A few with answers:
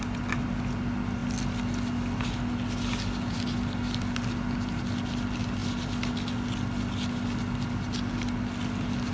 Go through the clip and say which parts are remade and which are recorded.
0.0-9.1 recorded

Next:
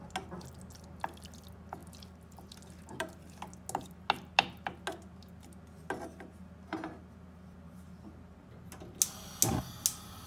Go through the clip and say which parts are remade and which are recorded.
0.0-10.3 recorded

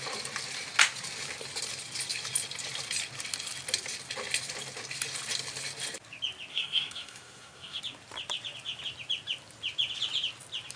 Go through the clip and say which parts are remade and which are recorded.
0.0-6.5 recorded; 6.5-7.8 remade; 7.8-10.8 recorded

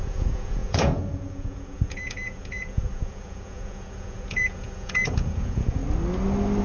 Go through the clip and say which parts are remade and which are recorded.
0.0-5.8 remade; 5.8-6.6 recorded

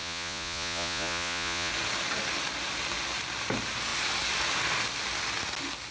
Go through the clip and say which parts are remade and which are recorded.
0.0-1.7 remade; 1.7-5.9 recorded

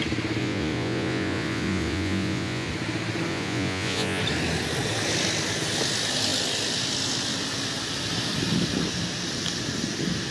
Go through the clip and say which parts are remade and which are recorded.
0.0-0.4 recorded; 0.4-2.7 remade; 2.7-3.3 recorded; 3.3-4.2 remade; 4.2-10.3 recorded